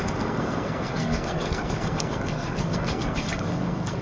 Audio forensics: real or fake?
fake